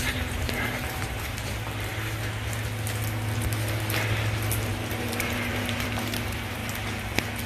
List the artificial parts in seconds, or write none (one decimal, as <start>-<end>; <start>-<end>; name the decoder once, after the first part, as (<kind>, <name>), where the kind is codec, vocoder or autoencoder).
0.0-1.9 (vocoder, BigVGAN v2); 4.7-6.6